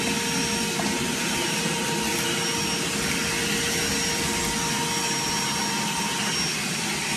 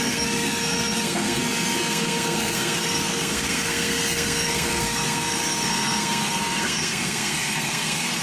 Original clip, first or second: first